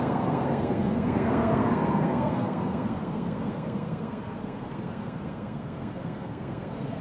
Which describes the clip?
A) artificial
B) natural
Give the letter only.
A